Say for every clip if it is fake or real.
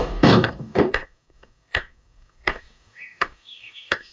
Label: fake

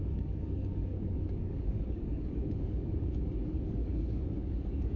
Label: fake